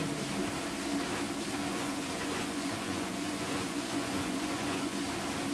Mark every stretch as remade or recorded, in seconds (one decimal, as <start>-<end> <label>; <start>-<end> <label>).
0.0-1.7 recorded; 1.7-5.0 remade; 5.0-5.5 recorded